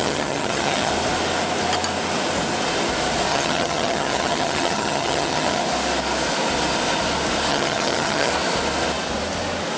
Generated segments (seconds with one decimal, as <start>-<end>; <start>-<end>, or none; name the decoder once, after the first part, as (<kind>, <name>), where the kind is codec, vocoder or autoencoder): 0.0-0.9 (vocoder, HiFi-GAN); 3.3-5.6; 7.5-8.3